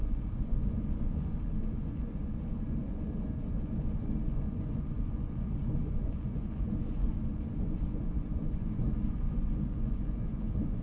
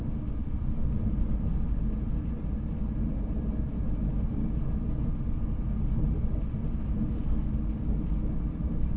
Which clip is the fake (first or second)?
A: first